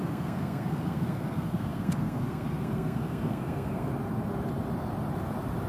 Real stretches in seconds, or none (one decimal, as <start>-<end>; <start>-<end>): 3.9-5.7